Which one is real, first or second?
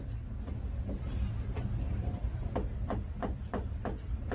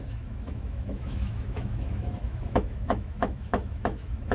first